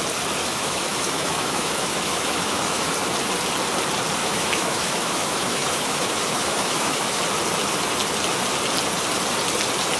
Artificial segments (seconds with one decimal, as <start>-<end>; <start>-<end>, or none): 0.4-2.9; 4.2-7.2